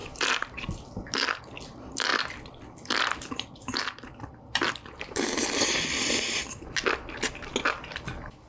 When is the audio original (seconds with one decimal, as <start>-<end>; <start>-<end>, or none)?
1.4-2.1; 5.8-8.5

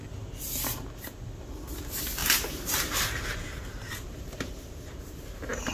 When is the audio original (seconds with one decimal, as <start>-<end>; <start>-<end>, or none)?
0.0-2.2

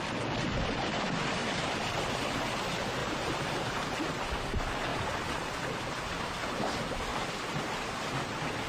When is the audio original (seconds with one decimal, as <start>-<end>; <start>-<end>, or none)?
0.0-3.0; 3.9-7.1; 8.1-8.7

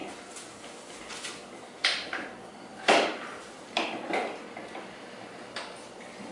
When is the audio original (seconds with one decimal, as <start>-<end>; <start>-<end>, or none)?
0.0-1.0

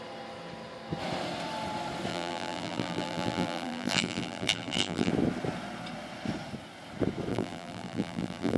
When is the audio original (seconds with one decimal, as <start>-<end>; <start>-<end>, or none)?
0.0-2.1; 5.1-7.3

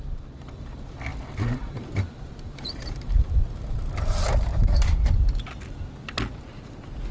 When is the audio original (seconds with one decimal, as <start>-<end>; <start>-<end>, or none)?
0.0-1.1; 5.4-7.1

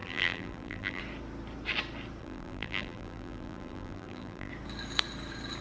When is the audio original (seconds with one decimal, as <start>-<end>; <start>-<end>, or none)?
1.0-2.2; 4.5-5.6

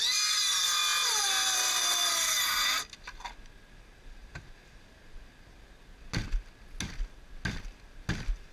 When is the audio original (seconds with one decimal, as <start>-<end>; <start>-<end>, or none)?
0.0-8.5